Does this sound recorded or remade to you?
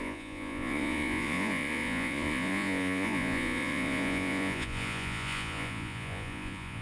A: remade